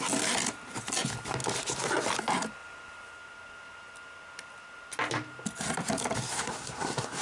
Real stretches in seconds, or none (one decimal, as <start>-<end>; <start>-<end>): 0.0-6.3